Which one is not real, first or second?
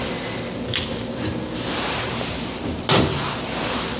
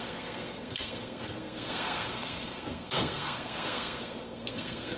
second